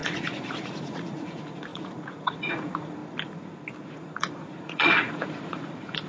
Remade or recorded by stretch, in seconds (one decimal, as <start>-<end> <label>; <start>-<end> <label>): 0.0-3.0 remade; 3.0-3.9 recorded; 3.9-6.1 remade